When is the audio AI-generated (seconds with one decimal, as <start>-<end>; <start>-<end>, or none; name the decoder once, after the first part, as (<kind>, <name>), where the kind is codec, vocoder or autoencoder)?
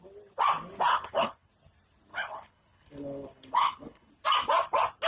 0.9-1.5 (codec, HILCodec); 2.1-4.1